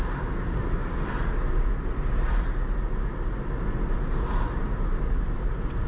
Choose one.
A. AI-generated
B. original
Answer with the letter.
B